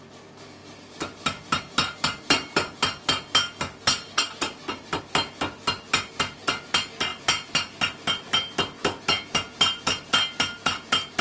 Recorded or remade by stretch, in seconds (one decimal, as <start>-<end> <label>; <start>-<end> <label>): 0.0-11.2 recorded